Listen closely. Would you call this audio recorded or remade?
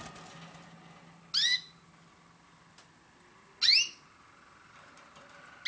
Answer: recorded